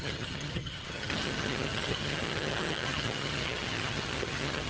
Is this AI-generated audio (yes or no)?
yes